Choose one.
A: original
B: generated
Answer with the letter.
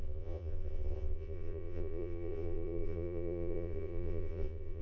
B